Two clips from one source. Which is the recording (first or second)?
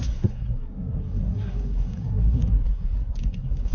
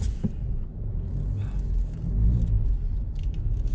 second